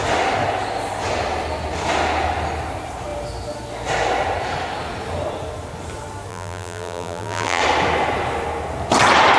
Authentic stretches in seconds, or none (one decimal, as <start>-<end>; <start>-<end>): 0.0-6.3; 7.6-9.4